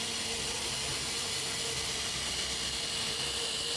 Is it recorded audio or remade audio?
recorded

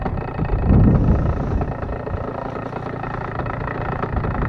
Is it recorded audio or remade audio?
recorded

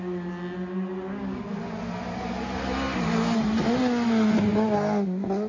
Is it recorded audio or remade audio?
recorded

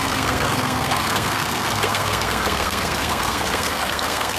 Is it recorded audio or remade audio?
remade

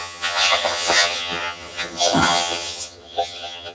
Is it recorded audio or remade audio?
remade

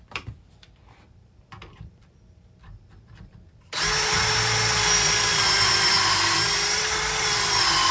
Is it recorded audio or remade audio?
remade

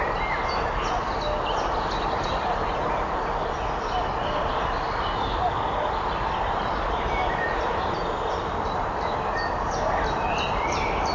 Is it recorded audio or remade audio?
recorded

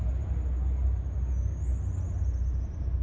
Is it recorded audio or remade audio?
recorded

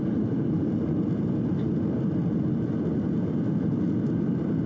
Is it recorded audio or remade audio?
recorded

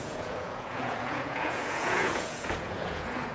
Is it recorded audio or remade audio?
remade